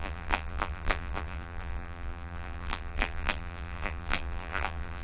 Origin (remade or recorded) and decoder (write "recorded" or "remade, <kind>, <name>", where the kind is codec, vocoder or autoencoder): remade, vocoder, BigVGAN v2